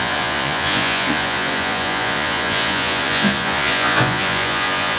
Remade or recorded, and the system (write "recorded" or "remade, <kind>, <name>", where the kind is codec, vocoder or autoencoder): remade, vocoder, Vocos